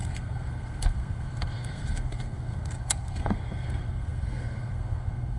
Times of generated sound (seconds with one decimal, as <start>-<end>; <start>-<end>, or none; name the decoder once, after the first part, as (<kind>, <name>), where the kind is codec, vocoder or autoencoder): 0.0-5.4 (codec, SNAC)